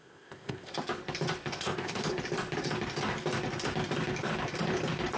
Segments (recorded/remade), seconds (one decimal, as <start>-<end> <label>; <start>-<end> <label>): 0.0-0.7 remade; 0.7-1.5 recorded; 1.5-2.0 remade; 2.0-5.2 recorded